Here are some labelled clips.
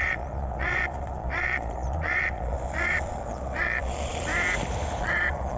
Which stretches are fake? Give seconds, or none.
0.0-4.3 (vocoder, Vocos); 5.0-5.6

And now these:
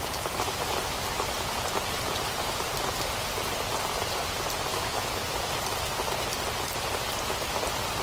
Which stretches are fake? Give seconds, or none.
4.7-5.4 (autoencoder, DAC-VAE)

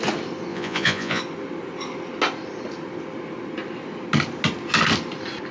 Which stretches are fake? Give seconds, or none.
0.5-1.2 (vocoder, Vocos)

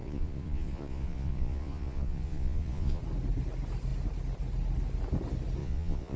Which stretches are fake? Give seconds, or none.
0.0-3.0 (vocoder, Vocos); 5.6-6.2

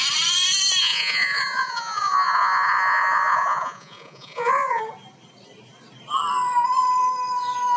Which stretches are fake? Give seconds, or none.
0.8-4.8 (vocoder, Vocos)

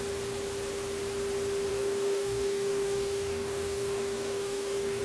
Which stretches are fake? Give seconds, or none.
1.7-5.0 (codec, DAC)